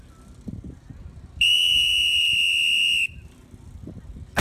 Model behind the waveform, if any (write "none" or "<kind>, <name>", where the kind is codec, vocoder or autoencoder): vocoder, BigVGAN v2